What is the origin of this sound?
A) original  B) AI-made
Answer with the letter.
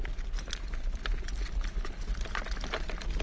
A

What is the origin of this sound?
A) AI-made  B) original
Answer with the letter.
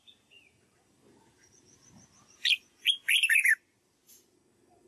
B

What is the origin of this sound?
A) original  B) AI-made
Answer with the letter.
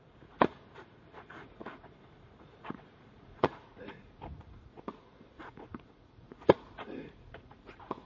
B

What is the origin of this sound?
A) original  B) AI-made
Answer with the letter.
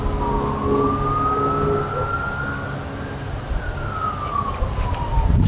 A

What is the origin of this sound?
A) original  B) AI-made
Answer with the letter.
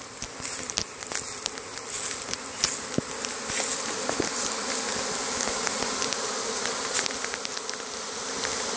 A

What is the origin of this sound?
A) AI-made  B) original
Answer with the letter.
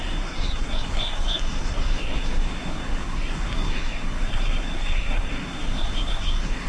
A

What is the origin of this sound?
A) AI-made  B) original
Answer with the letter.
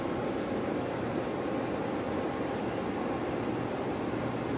B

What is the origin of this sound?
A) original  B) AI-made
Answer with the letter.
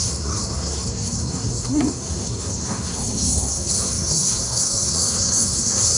B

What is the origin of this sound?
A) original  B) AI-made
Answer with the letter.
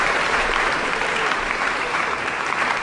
B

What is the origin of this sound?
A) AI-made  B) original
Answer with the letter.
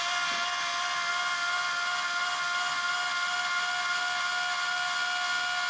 B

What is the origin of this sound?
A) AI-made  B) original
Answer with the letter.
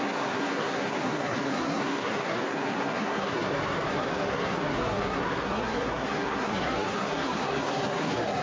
A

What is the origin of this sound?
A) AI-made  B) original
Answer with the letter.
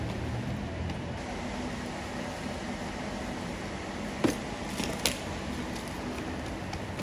B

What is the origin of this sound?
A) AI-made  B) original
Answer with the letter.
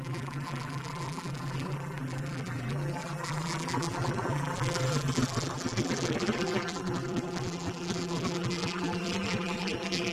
A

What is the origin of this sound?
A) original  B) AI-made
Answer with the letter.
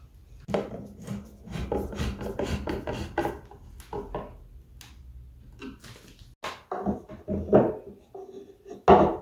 A